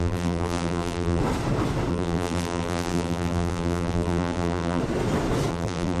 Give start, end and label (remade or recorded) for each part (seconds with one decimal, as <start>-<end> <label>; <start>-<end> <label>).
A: 0.0-1.2 remade; 1.2-1.9 recorded; 1.9-4.8 remade; 4.8-5.5 recorded; 5.5-6.0 remade